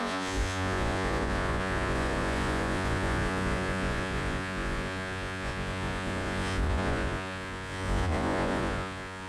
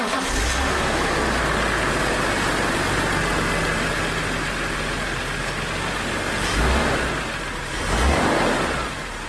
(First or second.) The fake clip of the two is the first